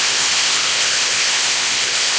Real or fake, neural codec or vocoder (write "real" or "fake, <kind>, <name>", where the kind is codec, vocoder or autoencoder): fake, codec, ZipCodec